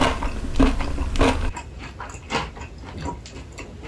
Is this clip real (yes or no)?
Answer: yes